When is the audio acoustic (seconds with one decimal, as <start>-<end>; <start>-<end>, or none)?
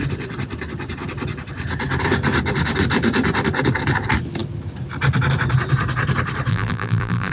0.0-6.5